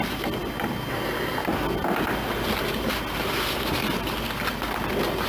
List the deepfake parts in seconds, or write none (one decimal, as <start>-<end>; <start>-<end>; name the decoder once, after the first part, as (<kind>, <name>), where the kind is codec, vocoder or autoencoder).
none